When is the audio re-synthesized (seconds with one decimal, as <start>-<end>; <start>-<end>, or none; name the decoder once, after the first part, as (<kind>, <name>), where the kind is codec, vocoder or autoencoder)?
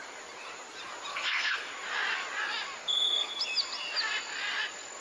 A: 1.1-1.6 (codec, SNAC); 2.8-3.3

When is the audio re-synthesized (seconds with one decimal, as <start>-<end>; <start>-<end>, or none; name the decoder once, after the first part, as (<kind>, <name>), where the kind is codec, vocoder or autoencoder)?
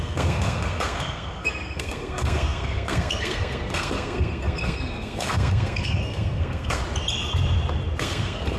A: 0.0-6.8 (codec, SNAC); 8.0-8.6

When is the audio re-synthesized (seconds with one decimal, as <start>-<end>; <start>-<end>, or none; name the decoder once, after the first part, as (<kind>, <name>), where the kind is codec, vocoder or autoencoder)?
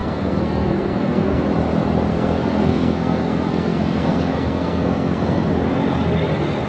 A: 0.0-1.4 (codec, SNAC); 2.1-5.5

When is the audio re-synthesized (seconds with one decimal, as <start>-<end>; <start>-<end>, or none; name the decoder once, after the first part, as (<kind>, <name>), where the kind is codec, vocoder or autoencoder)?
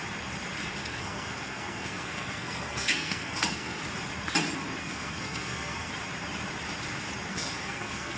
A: 0.8-3.8 (codec, SNAC); 4.8-5.9; 7.3-8.2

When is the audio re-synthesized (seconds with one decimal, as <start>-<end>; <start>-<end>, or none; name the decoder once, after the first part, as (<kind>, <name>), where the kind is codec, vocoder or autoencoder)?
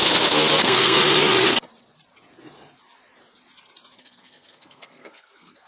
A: 0.6-1.0 (codec, SNAC); 4.0-5.7